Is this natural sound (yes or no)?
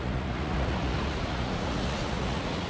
no